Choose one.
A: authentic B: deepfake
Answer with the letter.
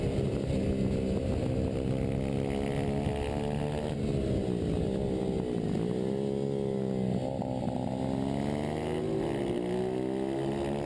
A